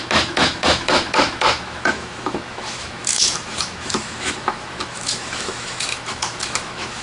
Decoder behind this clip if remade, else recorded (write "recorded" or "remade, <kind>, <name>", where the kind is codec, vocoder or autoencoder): remade, autoencoder, DAC-VAE